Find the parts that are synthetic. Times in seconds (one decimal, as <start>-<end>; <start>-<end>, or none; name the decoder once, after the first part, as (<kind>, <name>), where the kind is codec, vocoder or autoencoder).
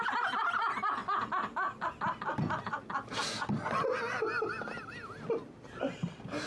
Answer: none